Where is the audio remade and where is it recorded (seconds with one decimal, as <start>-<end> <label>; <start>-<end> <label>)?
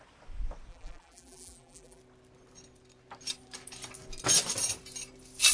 0.0-0.7 recorded; 0.7-2.0 remade; 2.0-5.5 recorded